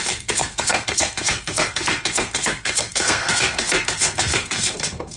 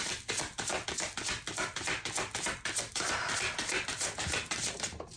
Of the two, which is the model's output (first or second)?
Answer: first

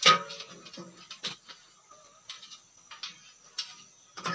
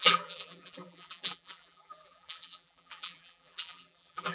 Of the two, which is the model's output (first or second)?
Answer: second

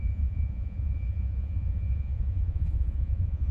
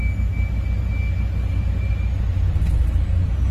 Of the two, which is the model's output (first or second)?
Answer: first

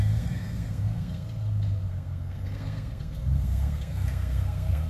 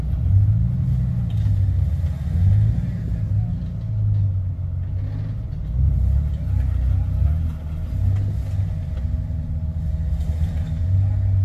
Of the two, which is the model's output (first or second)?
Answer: first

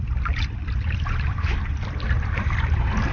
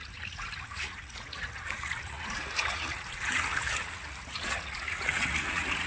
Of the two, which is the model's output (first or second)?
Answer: second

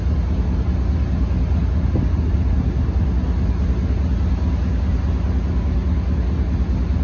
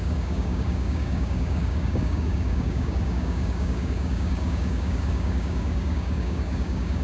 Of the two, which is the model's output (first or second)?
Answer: second